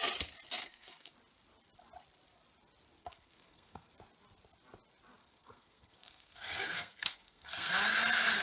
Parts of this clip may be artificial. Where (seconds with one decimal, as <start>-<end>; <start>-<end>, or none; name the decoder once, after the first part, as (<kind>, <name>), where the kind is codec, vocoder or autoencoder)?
0.6-1.1 (codec, SNAC); 3.0-3.9; 5.2-7.7